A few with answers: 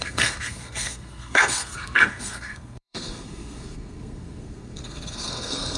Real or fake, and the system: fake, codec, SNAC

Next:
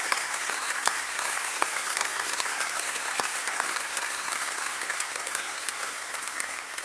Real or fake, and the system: fake, codec, SNAC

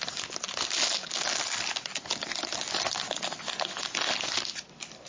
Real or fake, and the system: real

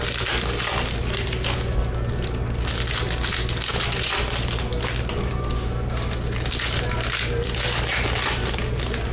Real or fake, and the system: real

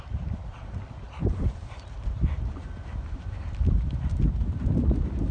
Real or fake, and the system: fake, vocoder, BigVGAN v2